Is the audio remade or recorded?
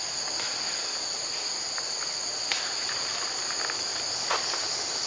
recorded